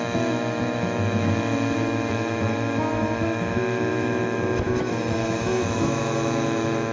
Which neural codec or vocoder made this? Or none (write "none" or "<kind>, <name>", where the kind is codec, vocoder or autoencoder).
autoencoder, DAC-VAE